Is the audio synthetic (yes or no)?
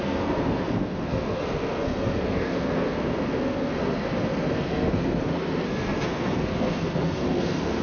yes